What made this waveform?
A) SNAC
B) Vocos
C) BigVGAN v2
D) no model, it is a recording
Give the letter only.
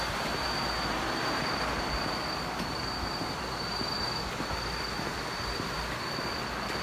D